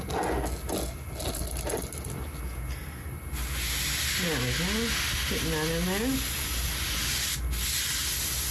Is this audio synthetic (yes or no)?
no